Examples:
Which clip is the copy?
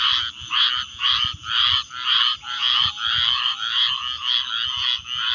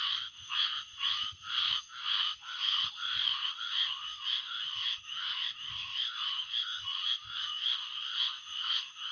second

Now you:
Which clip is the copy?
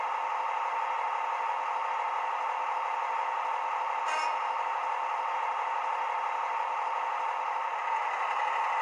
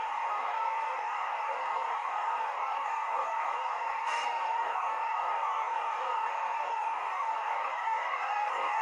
second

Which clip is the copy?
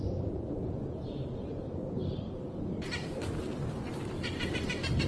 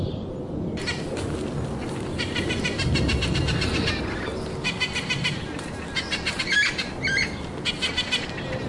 first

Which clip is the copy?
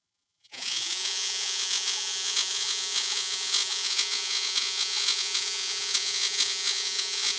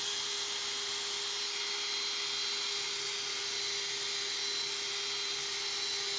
first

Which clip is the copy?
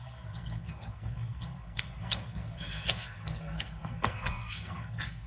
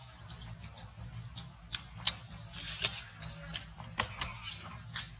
first